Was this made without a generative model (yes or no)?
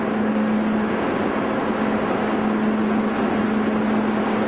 yes